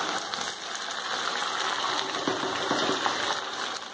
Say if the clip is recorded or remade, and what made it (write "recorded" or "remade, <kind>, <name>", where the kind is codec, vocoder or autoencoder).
recorded